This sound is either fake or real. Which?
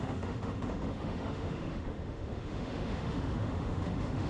fake